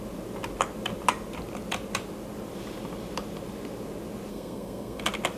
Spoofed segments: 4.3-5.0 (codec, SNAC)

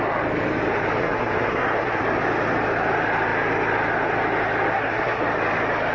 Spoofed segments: 1.0-2.0 (codec, SNAC); 4.7-5.2

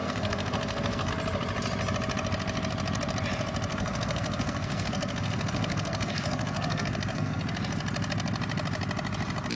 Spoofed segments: 0.0-1.1 (codec, SNAC); 3.7-7.4

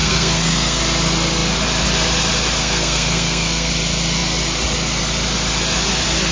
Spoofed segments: 0.0-0.8 (codec, SNAC); 2.6-3.7

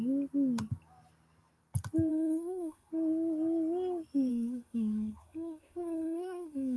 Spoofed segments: 2.1-2.9 (codec, SNAC); 4.3-6.8

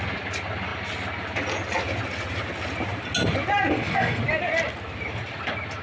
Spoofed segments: 3.7-4.2 (codec, SNAC)

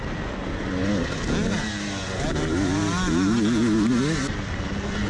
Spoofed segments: none